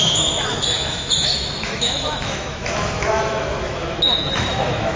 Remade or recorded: remade